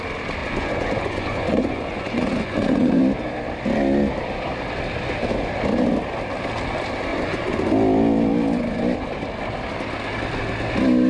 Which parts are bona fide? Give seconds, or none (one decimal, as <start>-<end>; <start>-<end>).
0.0-0.4; 3.0-7.1; 7.7-11.1